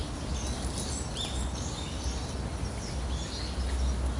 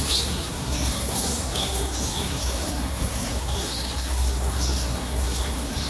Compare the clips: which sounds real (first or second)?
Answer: first